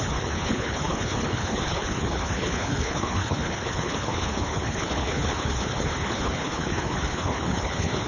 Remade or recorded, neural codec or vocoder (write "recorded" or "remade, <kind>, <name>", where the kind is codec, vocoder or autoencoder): remade, codec, HILCodec